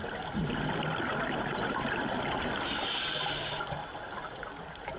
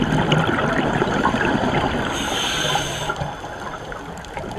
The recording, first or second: first